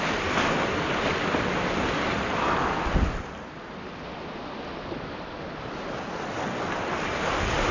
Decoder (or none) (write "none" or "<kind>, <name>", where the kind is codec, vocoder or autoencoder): none